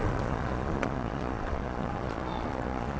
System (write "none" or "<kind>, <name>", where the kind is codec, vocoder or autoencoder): vocoder, Vocos